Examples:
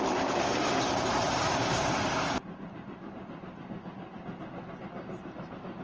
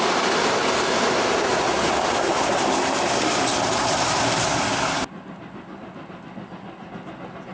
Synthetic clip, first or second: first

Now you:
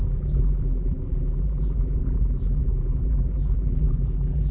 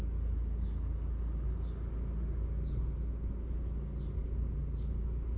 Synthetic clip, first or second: first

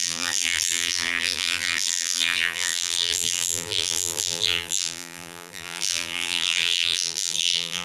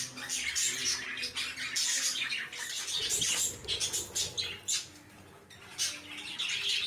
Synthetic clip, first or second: first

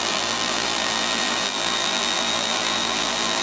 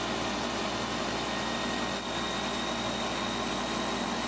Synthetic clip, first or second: first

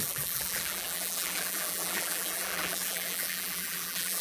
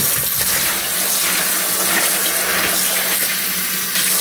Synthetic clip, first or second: first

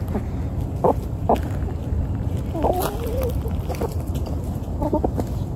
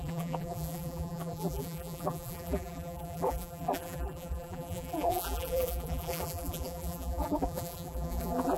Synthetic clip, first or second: second